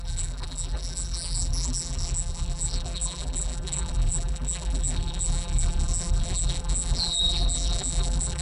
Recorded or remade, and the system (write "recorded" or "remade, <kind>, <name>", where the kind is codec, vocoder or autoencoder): remade, vocoder, BigVGAN v2